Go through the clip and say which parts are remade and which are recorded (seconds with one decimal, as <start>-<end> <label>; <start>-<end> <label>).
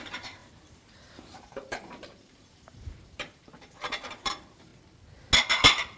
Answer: 0.0-4.7 remade; 4.7-5.5 recorded; 5.5-6.0 remade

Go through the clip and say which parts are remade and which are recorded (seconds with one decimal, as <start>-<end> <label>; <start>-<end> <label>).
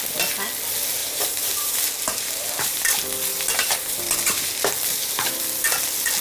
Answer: 0.0-1.0 recorded; 1.0-2.8 remade; 2.8-3.3 recorded; 3.3-5.4 remade; 5.4-6.2 recorded